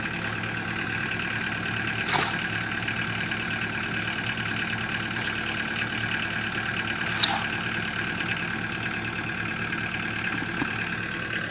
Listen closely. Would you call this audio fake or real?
real